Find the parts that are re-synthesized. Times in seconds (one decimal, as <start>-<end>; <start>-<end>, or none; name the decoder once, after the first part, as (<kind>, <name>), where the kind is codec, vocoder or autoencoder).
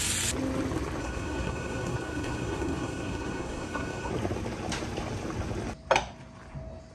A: 1.0-4.1 (codec, SNAC)